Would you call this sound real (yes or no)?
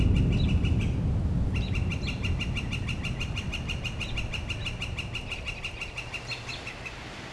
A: yes